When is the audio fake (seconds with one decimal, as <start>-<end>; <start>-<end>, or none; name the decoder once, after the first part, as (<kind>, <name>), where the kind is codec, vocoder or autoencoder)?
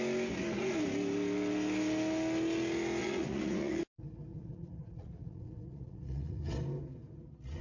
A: 3.0-3.8 (vocoder, Vocos); 4.3-6.4